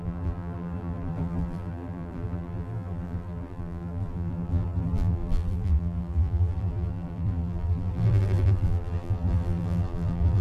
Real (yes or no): no